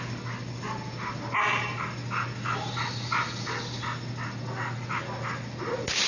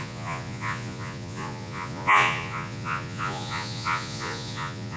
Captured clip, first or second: first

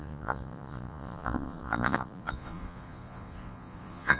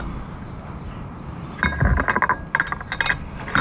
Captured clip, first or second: second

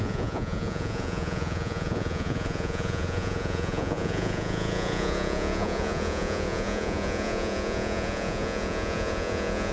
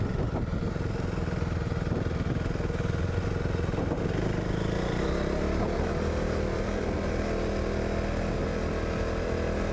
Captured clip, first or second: second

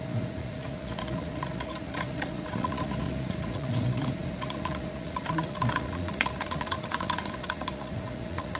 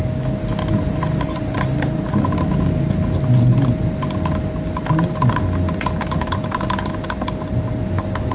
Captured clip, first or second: second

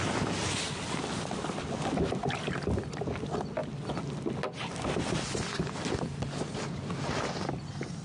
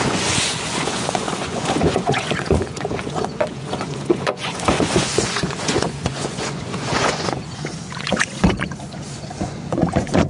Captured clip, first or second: first